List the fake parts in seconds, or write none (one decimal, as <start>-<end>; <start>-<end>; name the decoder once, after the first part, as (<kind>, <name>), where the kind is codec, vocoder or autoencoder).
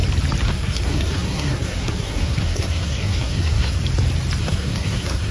0.5-3.8 (codec, SNAC); 4.4-5.3